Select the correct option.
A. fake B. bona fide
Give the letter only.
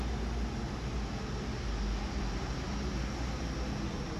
B